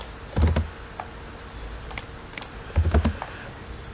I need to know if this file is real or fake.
real